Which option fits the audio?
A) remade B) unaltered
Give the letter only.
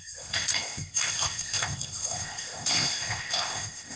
A